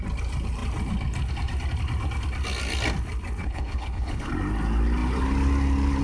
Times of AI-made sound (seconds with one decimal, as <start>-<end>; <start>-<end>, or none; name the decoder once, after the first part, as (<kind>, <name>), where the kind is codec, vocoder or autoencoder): 3.4-4.3 (codec, HILCodec)